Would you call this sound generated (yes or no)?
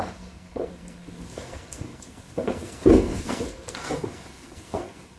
yes